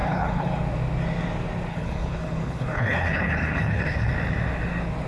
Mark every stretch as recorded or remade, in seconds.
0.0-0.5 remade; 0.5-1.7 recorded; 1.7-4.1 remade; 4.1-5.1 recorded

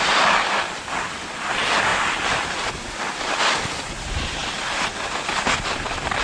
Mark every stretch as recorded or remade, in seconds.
0.0-6.2 recorded

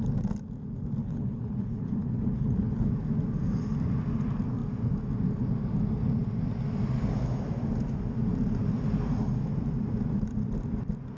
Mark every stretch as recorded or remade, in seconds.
0.0-1.0 recorded; 1.0-2.9 remade; 2.9-11.2 recorded

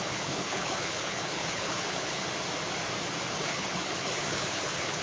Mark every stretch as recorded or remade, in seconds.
0.0-2.2 remade; 2.2-3.3 recorded; 3.3-5.0 remade